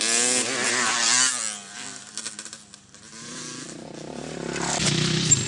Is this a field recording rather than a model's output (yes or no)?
yes